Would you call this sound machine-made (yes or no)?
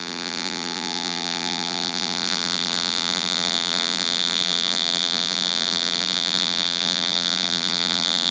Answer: yes